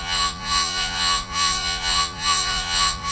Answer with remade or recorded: remade